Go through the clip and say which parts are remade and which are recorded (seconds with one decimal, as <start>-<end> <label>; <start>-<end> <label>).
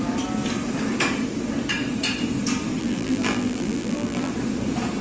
0.0-2.8 recorded; 2.8-4.3 remade; 4.3-5.0 recorded